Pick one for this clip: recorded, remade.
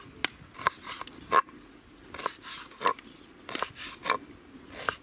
recorded